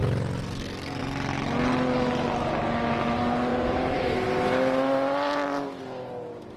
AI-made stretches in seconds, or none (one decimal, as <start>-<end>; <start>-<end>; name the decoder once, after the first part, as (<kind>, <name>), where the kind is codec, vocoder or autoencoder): 3.5-4.1 (vocoder, BigVGAN v2)

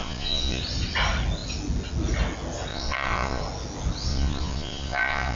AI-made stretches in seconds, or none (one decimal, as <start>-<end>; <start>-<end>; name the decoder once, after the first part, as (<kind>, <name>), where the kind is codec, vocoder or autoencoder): 0.0-0.6 (vocoder, Vocos); 2.7-3.4; 4.1-5.4

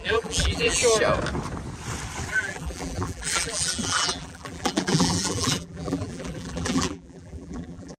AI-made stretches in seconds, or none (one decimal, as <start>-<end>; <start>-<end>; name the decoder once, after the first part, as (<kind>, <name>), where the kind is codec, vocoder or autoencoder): 0.0-0.8 (vocoder, BigVGAN v2); 2.3-8.0

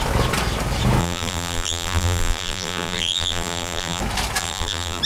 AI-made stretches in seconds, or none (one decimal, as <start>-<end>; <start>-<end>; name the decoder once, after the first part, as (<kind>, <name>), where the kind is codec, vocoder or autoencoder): 1.0-4.0 (vocoder, BigVGAN v2); 4.4-5.0

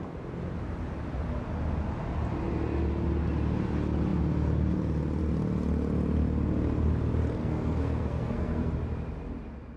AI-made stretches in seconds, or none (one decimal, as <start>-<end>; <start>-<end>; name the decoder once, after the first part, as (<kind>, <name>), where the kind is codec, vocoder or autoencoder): 7.4-8.7 (codec, SNAC)